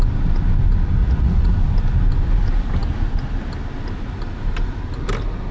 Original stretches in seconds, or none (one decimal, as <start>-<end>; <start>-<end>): 0.0-1.0; 1.5-5.5